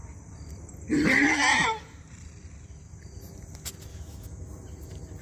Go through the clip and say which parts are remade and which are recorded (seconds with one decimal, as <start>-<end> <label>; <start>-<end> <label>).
0.0-3.9 recorded; 3.9-4.4 remade; 4.4-5.2 recorded